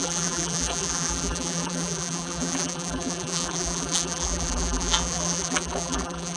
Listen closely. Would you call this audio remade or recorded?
remade